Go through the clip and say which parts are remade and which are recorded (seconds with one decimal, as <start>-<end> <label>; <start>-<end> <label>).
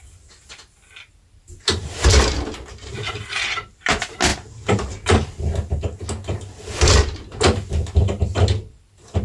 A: 0.0-4.3 recorded; 4.3-4.9 remade; 4.9-9.2 recorded